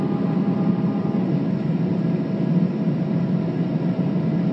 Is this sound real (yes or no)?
yes